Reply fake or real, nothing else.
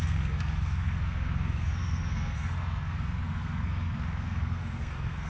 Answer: fake